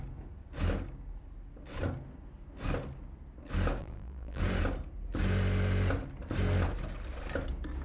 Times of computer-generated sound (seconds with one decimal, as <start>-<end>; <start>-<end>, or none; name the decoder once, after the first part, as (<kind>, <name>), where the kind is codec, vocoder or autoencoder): 3.8-4.4 (vocoder, BigVGAN v2)